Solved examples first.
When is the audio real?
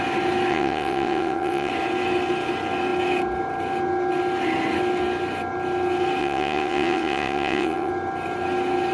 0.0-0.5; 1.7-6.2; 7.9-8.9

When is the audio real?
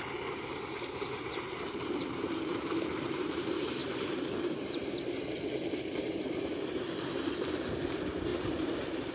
2.5-3.1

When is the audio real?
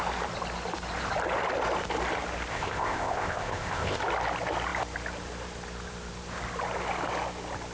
0.0-2.5; 4.0-7.7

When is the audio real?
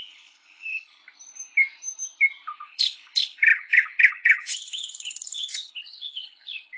1.0-2.5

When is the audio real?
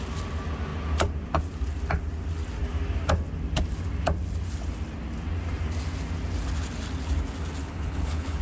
0.0-7.6